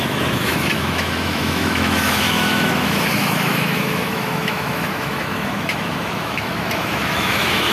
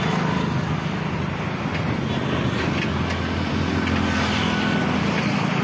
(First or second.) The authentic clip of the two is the second